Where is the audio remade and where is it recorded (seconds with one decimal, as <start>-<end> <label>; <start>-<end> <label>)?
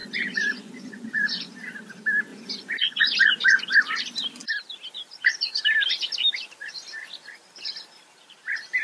0.0-1.5 remade; 1.5-2.3 recorded; 2.3-3.2 remade; 3.2-8.8 recorded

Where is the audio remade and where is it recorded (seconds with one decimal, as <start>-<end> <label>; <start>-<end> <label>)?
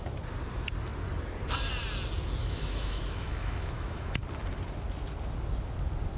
0.0-2.4 recorded; 2.4-4.2 remade; 4.2-6.2 recorded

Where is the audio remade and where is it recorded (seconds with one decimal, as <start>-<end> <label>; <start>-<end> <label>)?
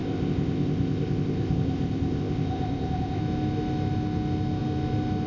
0.0-3.2 remade; 3.2-5.3 recorded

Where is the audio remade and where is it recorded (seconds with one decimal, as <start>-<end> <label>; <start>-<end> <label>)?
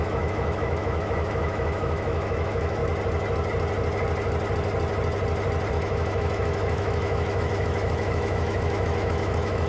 0.0-2.8 remade; 2.8-5.7 recorded; 5.7-9.7 remade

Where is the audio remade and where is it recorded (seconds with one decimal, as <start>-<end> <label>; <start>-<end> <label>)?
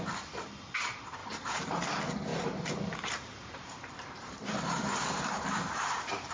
0.0-1.2 recorded; 1.2-1.7 remade; 1.7-2.3 recorded; 2.3-6.3 remade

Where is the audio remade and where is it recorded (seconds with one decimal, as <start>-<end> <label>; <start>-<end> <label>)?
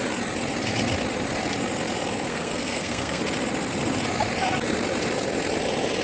0.0-2.3 recorded; 2.3-3.2 remade; 3.2-6.0 recorded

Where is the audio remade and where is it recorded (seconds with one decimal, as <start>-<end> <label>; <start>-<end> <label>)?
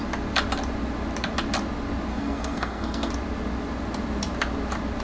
0.0-2.1 recorded; 2.1-3.1 remade; 3.1-5.0 recorded